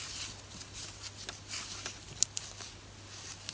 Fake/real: real